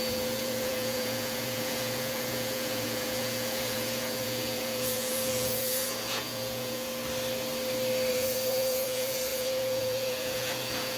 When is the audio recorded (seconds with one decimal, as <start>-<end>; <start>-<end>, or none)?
7.0-8.1